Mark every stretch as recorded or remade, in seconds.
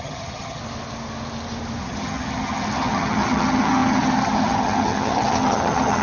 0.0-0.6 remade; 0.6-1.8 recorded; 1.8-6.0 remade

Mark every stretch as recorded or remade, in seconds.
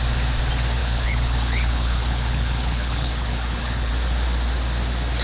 0.0-0.8 recorded; 0.8-3.9 remade; 3.9-5.2 recorded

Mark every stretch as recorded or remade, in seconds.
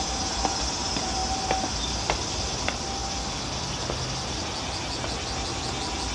0.0-6.1 recorded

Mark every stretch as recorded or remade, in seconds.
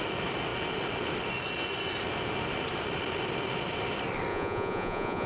0.0-4.3 recorded; 4.3-5.3 remade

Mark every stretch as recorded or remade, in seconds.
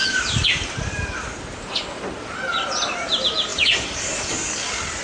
0.0-5.0 recorded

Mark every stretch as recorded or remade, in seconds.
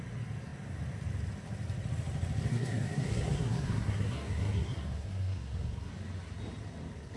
0.0-2.5 recorded; 2.5-5.9 remade; 5.9-7.2 recorded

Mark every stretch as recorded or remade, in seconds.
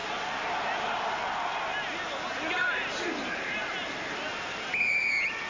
0.0-5.5 recorded